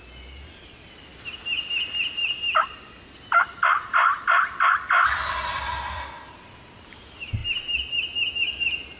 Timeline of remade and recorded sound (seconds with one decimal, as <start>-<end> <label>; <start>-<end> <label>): 0.0-9.0 recorded